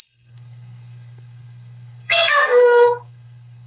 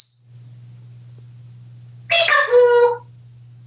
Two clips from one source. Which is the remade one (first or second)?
first